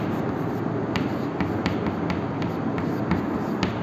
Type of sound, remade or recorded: recorded